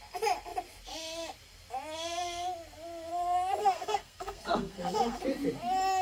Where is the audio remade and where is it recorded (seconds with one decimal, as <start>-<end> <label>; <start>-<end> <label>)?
0.0-3.6 recorded; 3.6-5.2 remade; 5.2-6.0 recorded